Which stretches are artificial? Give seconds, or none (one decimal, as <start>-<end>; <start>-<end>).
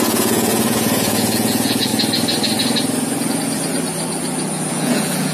0.0-1.9; 4.7-5.3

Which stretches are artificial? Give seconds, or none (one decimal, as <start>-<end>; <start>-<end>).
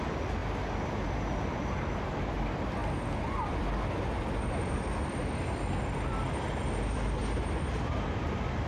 none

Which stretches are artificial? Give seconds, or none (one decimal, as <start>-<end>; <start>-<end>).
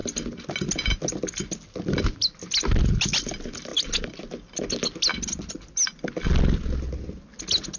none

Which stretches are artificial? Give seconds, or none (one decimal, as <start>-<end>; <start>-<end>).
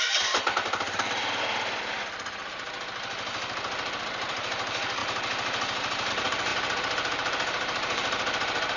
0.0-1.2; 4.0-5.0; 6.1-8.8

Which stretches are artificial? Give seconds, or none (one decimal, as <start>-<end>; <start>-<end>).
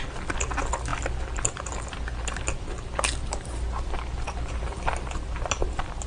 none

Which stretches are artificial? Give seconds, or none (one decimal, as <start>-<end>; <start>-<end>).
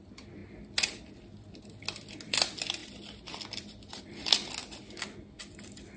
none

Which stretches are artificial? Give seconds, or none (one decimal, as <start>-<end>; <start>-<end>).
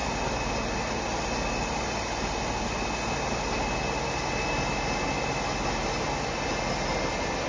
none